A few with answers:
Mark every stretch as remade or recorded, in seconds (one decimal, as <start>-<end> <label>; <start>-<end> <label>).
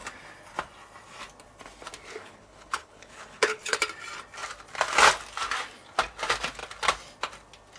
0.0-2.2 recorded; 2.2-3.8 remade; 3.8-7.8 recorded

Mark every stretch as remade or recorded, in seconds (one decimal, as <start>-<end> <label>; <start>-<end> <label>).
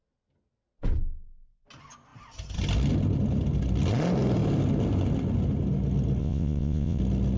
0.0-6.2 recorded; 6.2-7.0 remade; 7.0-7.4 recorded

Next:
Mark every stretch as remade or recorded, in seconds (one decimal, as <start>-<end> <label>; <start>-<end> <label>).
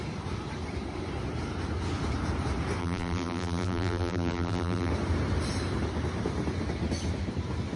0.0-2.8 recorded; 2.8-4.9 remade; 4.9-7.8 recorded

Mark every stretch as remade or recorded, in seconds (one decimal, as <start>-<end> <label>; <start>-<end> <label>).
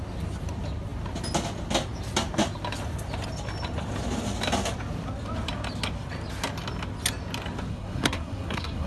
0.0-7.7 recorded; 7.7-8.9 remade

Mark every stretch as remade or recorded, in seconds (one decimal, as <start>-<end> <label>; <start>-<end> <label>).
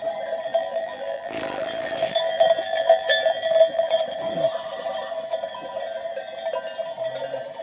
0.0-0.5 recorded; 0.5-4.0 remade; 4.0-7.6 recorded